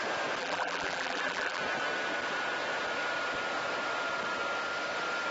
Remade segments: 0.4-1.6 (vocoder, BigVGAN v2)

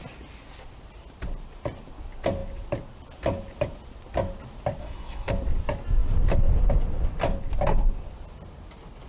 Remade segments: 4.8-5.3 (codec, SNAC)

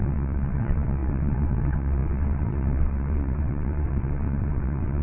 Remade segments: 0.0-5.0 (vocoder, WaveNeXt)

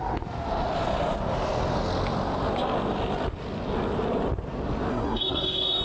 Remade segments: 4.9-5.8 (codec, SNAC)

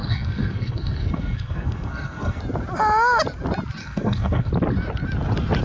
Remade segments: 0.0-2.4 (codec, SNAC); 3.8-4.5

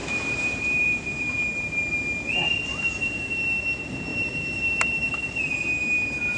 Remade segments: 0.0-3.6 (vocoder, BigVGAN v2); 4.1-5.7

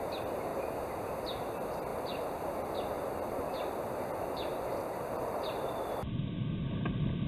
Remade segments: none